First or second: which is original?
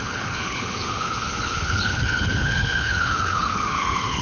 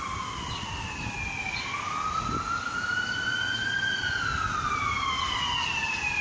second